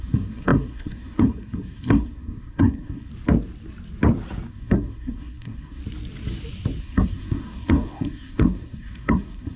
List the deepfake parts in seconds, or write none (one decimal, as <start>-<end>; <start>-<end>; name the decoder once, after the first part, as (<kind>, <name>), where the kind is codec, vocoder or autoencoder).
0.0-3.1 (codec, SNAC); 4.5-5.8; 6.8-9.6